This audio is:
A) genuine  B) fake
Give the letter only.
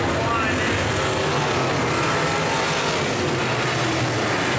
A